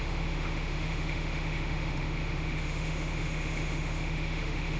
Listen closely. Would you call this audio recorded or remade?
remade